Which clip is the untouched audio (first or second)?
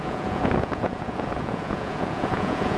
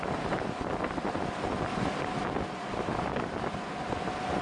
second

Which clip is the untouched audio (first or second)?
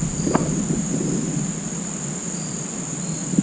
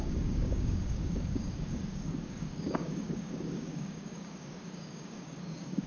first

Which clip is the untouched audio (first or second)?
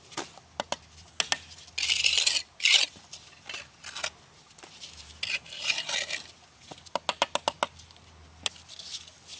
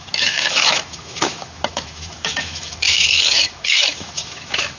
first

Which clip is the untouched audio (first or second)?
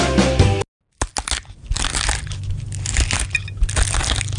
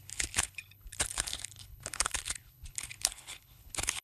first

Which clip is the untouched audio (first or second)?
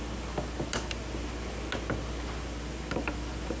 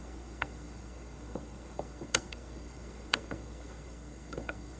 first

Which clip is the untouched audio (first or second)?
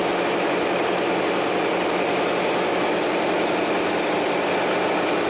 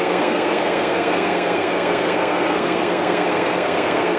first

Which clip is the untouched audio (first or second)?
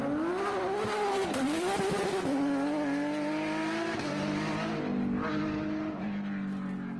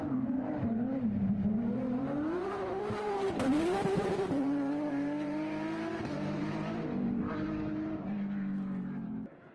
first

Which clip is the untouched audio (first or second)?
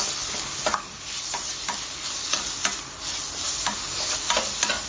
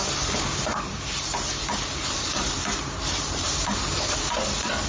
first